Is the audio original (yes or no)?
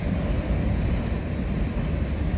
yes